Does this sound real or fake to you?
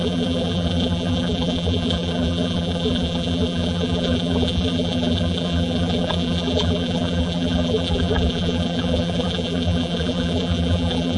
fake